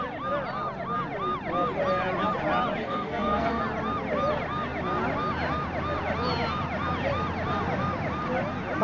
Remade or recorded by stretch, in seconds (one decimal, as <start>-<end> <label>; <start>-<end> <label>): 0.0-2.8 recorded; 2.8-3.6 remade; 3.6-8.8 recorded